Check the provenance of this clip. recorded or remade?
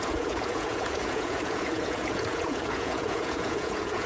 remade